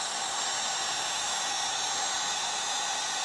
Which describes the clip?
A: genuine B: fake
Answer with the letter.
A